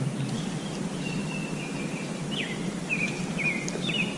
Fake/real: real